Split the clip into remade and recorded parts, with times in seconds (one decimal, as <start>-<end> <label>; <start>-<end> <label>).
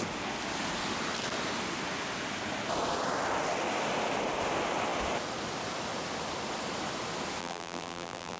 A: 0.0-7.4 recorded; 7.4-8.4 remade